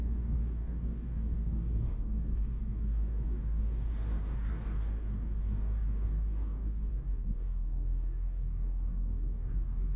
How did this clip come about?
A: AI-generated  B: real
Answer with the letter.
A